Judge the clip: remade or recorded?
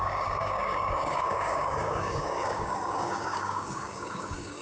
remade